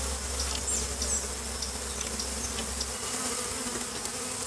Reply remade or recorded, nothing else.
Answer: recorded